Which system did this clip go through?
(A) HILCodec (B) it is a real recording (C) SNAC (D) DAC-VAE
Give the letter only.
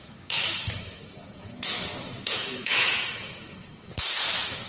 D